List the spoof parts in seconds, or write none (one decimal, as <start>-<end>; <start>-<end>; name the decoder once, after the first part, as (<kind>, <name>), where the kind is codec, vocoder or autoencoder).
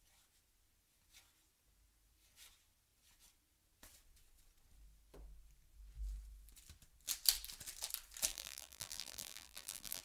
8.3-10.0 (vocoder, BigVGAN v2)